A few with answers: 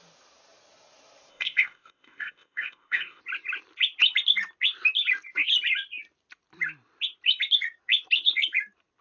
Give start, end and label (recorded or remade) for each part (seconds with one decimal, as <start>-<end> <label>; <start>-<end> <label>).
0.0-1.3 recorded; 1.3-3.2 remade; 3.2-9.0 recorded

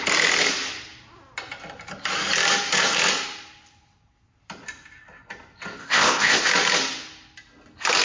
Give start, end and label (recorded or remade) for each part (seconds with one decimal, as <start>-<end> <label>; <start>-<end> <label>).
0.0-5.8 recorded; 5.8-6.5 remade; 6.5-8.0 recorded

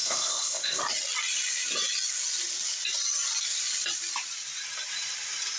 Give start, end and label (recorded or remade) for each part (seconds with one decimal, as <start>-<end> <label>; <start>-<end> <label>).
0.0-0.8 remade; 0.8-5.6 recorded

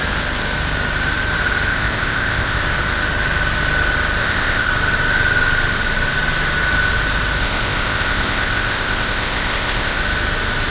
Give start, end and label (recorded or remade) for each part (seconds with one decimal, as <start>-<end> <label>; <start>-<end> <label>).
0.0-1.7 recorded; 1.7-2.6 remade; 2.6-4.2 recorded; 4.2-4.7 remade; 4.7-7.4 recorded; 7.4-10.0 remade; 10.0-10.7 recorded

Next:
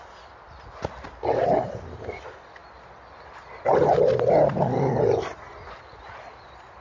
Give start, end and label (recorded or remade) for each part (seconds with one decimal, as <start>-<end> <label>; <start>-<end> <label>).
0.0-6.8 recorded

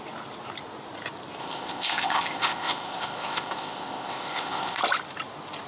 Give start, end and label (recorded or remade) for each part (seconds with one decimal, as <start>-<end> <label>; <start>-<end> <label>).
0.0-1.4 recorded; 1.4-4.8 remade; 4.8-5.7 recorded